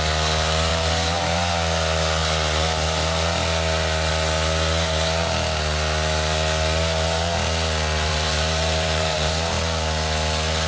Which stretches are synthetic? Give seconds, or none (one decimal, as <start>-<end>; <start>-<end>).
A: 0.7-1.5; 8.1-9.3